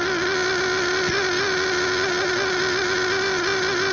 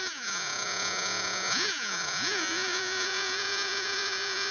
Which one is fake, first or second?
second